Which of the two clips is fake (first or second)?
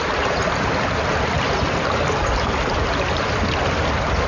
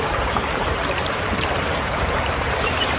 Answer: second